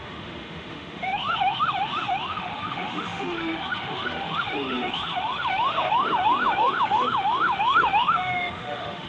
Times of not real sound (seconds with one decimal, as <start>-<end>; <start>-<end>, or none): 0.0-9.1